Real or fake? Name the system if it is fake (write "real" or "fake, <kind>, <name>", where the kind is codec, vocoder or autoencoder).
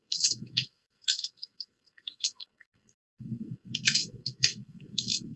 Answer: fake, codec, SNAC